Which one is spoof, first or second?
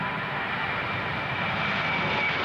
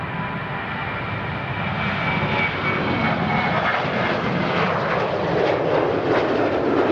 first